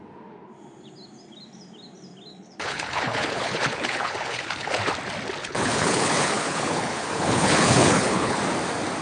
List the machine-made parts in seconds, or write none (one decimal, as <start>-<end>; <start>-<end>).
2.3-4.8; 5.4-8.4